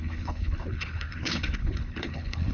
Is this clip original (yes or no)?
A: no